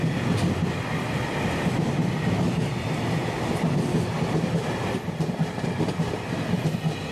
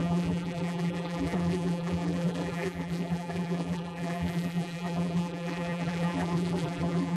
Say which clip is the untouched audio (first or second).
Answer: first